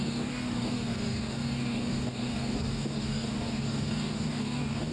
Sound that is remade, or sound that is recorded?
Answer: remade